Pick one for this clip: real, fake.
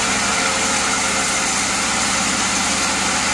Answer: real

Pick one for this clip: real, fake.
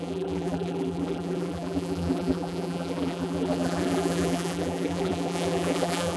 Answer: fake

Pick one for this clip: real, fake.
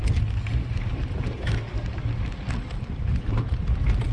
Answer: real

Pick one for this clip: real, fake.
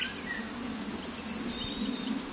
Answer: real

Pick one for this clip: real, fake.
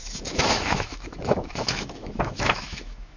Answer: fake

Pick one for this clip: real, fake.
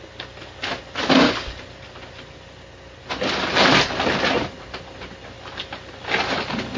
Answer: real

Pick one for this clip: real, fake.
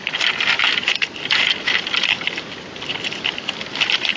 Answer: real